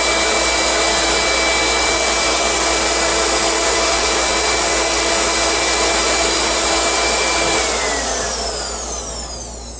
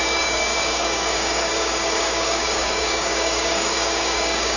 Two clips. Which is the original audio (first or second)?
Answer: first